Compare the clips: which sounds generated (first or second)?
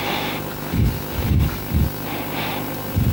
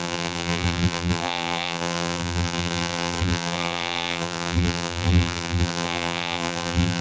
second